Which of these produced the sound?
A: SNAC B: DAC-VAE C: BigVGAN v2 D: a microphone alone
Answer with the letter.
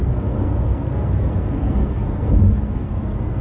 A